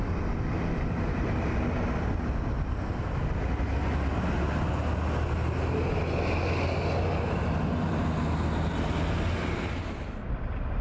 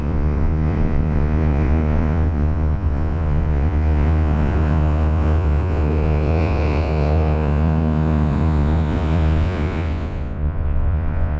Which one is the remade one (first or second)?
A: second